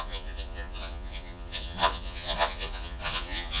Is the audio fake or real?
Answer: fake